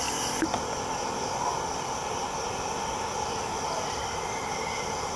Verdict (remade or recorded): recorded